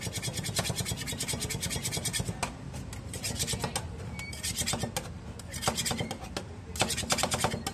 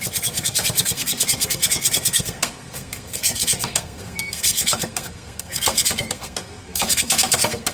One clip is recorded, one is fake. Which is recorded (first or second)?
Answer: first